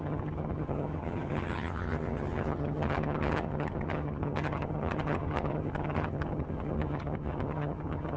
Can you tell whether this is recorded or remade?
remade